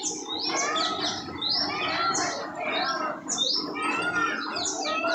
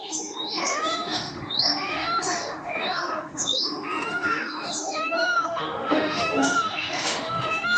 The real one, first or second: first